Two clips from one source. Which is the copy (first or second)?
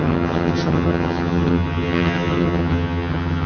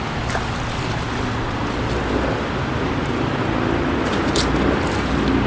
first